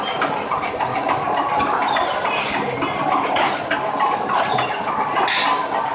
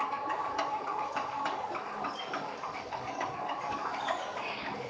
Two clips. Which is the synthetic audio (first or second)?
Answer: second